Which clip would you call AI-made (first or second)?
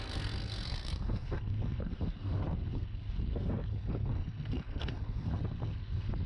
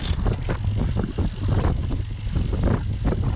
first